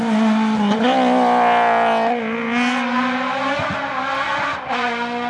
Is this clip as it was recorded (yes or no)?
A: yes